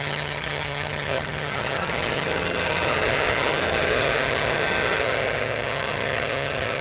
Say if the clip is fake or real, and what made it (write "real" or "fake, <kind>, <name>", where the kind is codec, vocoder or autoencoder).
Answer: fake, vocoder, HiFi-GAN